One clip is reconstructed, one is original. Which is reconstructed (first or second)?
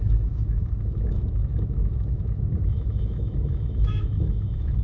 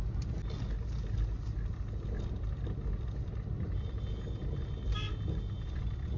first